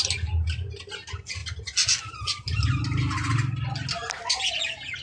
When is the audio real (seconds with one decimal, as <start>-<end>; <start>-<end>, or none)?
0.0-5.0